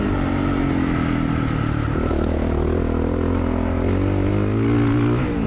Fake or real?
real